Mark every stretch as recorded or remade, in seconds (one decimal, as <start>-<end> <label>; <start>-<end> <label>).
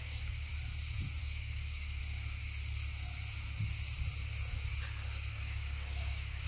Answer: 0.0-0.5 remade; 0.5-1.2 recorded; 1.2-2.0 remade; 2.0-5.3 recorded; 5.3-6.5 remade